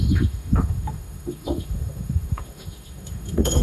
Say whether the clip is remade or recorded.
remade